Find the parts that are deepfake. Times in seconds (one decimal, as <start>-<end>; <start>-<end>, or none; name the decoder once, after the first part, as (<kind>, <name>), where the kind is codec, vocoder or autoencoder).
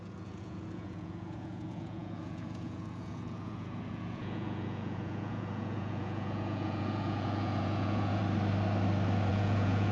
0.0-8.2 (vocoder, Vocos); 9.3-9.9